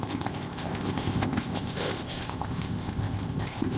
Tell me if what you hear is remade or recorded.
remade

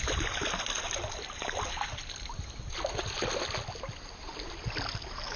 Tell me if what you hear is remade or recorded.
recorded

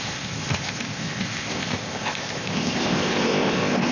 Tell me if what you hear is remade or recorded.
remade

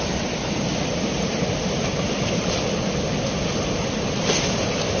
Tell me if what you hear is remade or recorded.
recorded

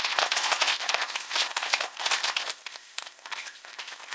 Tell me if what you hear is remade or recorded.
remade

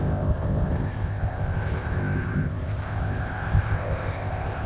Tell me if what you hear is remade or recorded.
remade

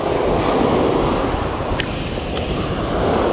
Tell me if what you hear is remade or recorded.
recorded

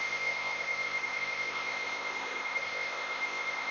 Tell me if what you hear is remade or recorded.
remade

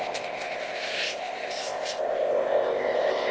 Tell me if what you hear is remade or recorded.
remade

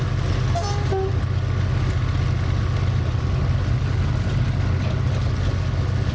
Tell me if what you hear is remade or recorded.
recorded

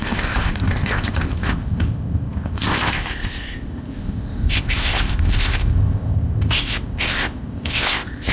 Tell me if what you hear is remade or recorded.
remade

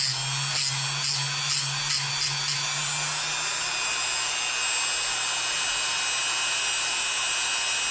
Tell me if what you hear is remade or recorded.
recorded